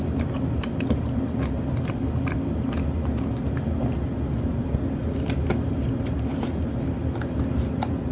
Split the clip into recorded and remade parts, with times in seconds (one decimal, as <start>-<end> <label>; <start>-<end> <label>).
0.0-8.1 recorded